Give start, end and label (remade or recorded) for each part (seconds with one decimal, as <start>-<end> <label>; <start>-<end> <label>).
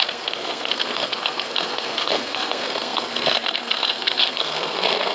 0.0-5.1 remade